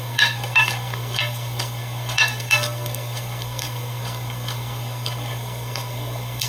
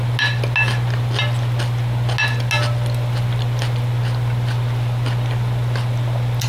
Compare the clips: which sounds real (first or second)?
second